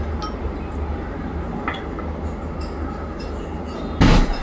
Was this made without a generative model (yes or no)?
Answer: yes